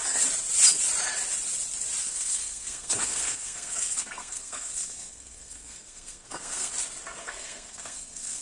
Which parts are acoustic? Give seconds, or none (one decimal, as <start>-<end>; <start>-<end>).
0.0-2.0; 6.7-7.2